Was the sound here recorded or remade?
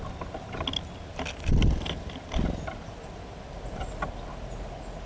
recorded